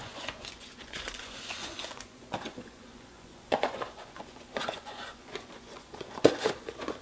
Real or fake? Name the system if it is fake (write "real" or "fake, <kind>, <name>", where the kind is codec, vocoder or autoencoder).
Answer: fake, vocoder, Vocos